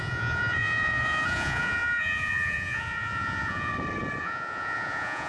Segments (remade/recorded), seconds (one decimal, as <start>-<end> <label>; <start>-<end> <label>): 0.0-3.7 remade; 3.7-4.2 recorded; 4.2-5.3 remade

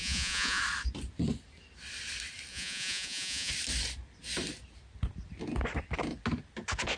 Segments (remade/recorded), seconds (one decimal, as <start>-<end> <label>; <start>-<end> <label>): 0.0-0.6 remade; 0.6-2.5 recorded; 2.5-3.5 remade; 3.5-7.0 recorded

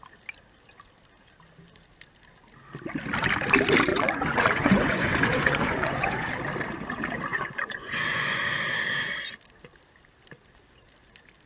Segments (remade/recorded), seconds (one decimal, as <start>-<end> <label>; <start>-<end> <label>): 0.0-3.9 recorded; 3.9-6.3 remade; 6.3-7.3 recorded; 7.3-8.4 remade; 8.4-11.5 recorded

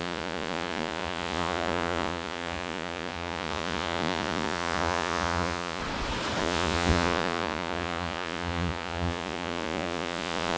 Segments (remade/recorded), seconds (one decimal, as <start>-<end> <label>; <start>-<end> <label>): 0.0-5.8 remade; 5.8-6.4 recorded; 6.4-10.6 remade

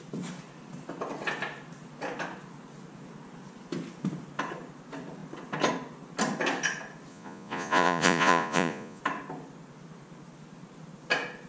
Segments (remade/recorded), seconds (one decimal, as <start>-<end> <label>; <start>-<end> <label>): 0.0-7.1 recorded; 7.1-9.0 remade; 9.0-11.5 recorded